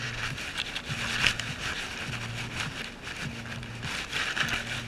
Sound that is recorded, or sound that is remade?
recorded